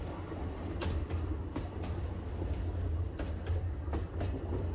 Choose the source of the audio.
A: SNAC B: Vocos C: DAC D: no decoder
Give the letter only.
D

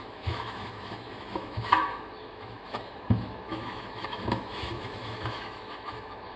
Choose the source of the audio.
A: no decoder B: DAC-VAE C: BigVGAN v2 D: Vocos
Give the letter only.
B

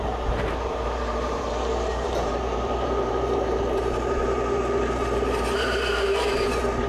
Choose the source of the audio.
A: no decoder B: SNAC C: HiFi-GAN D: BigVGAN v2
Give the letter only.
D